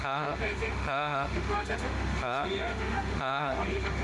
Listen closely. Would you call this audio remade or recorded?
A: remade